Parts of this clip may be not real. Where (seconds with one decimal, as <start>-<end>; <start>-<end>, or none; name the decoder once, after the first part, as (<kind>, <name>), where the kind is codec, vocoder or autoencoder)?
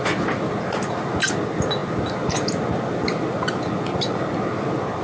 none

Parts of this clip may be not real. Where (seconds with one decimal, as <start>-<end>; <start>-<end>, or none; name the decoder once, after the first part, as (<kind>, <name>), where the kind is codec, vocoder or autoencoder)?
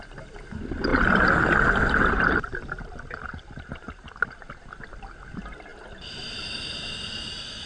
none